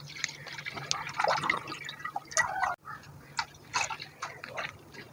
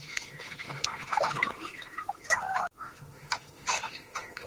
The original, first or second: first